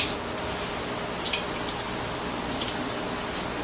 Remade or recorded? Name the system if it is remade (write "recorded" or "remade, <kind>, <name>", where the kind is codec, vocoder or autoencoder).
recorded